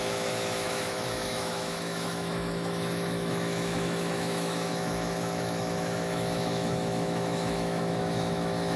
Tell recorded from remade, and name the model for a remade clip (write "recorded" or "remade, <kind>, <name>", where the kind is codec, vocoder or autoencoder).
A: remade, autoencoder, DAC-VAE